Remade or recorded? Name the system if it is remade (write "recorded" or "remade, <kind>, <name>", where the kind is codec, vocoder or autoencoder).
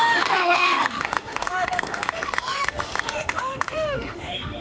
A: remade, autoencoder, DAC-VAE